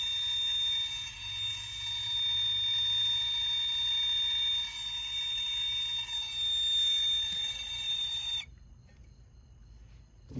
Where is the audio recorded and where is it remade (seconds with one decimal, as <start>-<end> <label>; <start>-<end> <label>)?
0.0-7.4 recorded; 7.4-10.4 remade